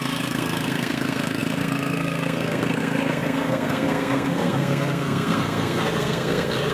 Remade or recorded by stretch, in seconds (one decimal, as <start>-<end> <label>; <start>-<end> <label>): 0.0-6.7 remade